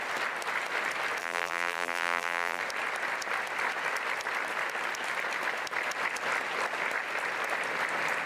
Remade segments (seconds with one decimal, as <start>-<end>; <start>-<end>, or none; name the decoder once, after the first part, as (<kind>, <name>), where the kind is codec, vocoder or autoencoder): 1.2-2.6 (vocoder, BigVGAN v2)